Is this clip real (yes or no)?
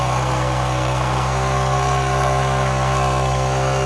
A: no